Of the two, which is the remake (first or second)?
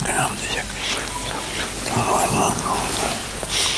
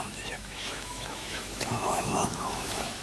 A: second